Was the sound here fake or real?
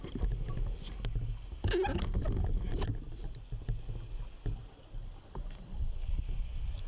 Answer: real